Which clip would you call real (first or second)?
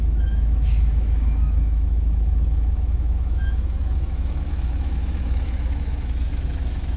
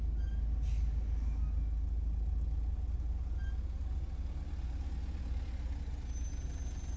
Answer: second